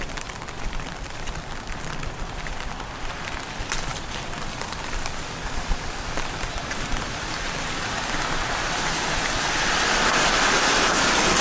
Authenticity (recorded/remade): remade